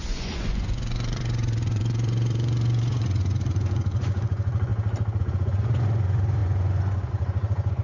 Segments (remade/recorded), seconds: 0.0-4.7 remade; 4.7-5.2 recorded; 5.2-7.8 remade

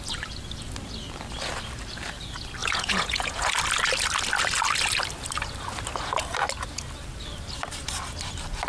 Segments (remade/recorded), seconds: 0.0-2.6 recorded; 2.6-3.5 remade; 3.5-8.7 recorded

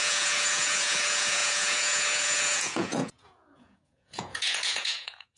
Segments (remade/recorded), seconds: 0.0-5.4 remade